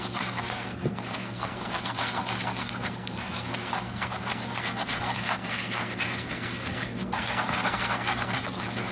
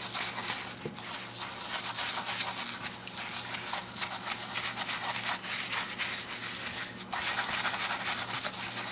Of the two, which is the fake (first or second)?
first